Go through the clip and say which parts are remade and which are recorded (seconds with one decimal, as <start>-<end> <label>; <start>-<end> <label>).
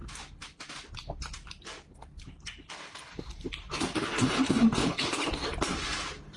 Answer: 0.0-4.8 recorded; 4.8-5.3 remade; 5.3-6.4 recorded